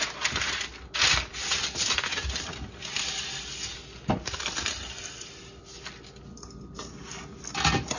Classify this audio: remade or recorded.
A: recorded